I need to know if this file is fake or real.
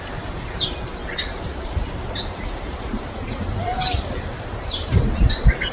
fake